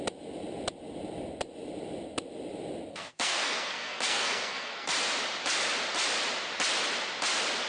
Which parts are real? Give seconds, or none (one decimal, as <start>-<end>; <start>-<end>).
0.0-2.9; 4.9-7.7